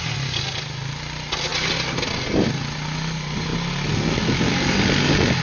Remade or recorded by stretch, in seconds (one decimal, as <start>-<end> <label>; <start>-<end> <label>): 0.0-5.4 recorded